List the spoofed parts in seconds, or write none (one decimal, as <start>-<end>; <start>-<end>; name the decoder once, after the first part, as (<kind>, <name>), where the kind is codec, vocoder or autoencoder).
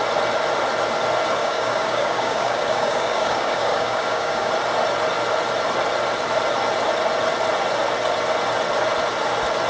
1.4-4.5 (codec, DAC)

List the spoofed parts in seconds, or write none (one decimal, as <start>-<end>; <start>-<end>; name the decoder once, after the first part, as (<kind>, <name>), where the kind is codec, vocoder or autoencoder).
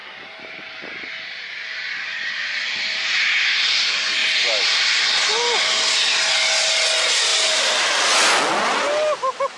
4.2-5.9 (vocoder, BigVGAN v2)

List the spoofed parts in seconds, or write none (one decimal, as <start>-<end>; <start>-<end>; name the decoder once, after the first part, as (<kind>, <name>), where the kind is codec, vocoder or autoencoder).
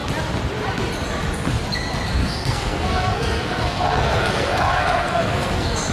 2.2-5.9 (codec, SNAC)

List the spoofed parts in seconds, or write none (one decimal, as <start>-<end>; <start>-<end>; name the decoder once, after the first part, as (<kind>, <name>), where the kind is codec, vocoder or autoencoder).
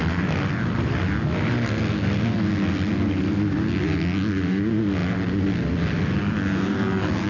none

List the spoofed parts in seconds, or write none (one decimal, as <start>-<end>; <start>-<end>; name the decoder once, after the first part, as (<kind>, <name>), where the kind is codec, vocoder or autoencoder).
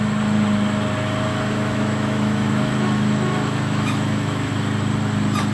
1.3-4.5 (autoencoder, DAC-VAE)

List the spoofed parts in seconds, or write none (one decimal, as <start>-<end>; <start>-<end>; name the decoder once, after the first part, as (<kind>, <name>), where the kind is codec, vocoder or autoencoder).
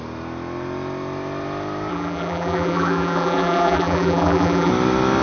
1.9-4.7 (vocoder, BigVGAN v2)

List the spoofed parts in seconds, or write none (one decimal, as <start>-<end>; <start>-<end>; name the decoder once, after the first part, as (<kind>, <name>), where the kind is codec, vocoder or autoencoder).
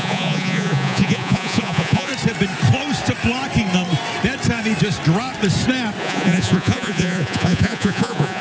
0.0-2.1 (vocoder, Vocos); 6.0-8.4